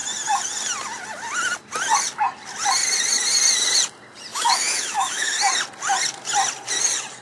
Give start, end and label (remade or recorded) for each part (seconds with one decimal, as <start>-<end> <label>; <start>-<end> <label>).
0.0-4.3 recorded; 4.3-5.4 remade; 5.4-7.2 recorded